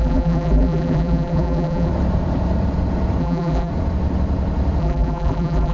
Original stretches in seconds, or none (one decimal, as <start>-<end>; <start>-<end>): 1.9-3.2; 3.7-4.8

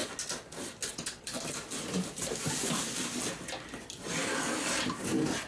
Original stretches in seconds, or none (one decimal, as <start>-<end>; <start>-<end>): 0.0-5.5

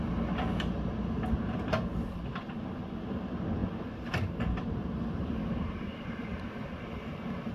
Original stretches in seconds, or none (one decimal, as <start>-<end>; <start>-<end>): 0.0-3.6; 6.4-7.5

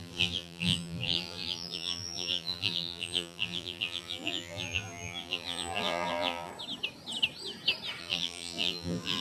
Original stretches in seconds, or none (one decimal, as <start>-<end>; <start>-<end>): 6.5-8.0

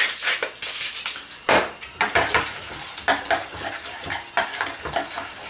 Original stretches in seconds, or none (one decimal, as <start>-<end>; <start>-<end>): 0.0-1.4; 2.7-5.5

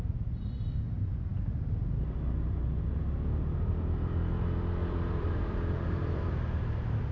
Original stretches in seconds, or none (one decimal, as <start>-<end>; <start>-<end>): 0.0-4.8; 6.2-7.1